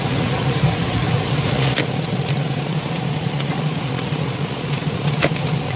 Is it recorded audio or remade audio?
remade